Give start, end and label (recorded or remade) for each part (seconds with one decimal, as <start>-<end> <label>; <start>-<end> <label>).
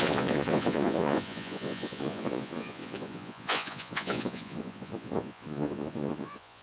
0.0-6.6 remade